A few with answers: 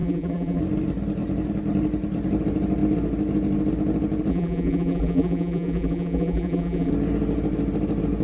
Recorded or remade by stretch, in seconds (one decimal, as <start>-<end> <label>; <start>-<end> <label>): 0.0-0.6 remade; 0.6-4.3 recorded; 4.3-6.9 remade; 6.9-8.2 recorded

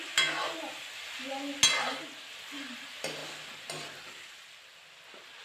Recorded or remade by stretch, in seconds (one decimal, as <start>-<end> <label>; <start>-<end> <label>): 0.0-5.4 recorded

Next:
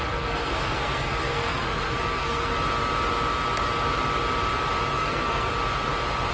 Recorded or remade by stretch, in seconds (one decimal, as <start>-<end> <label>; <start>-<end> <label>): 0.0-2.5 remade; 2.5-4.9 recorded; 4.9-5.5 remade; 5.5-6.3 recorded

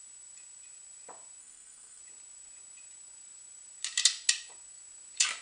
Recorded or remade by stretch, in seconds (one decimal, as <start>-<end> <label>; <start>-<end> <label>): 0.0-1.4 recorded; 1.4-2.0 remade; 2.0-5.4 recorded